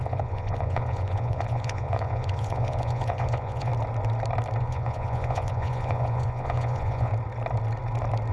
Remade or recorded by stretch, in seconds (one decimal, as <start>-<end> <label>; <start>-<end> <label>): 0.0-3.7 remade; 3.7-4.6 recorded; 4.6-7.1 remade; 7.1-8.3 recorded